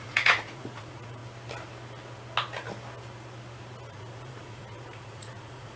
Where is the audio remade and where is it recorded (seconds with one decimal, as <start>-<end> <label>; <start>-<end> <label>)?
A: 0.0-1.2 remade; 1.2-3.9 recorded; 3.9-5.8 remade